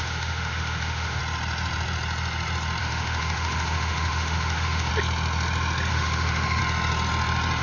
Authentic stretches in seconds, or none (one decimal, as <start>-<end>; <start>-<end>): 1.2-2.8; 4.9-5.9; 6.6-7.6